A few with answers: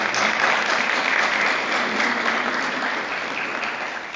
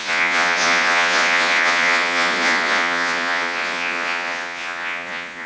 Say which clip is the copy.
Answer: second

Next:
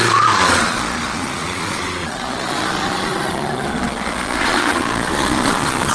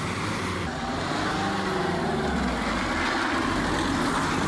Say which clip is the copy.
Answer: first